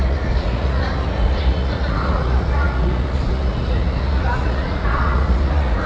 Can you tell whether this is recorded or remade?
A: remade